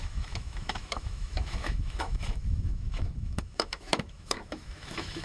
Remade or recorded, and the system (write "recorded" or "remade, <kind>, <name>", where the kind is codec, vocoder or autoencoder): remade, autoencoder, DAC-VAE